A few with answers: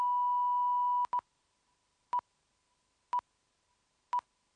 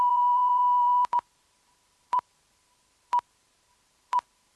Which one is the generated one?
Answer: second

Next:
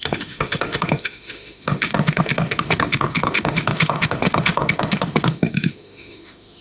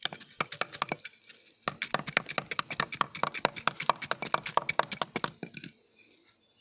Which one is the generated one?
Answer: first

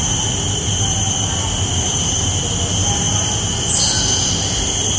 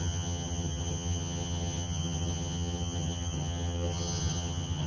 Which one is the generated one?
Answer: second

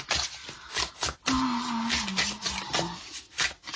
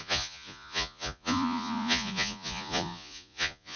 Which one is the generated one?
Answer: second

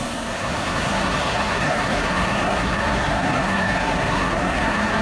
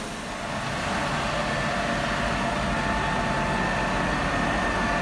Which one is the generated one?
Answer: first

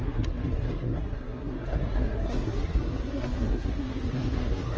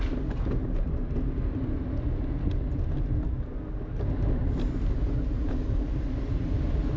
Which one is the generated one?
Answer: first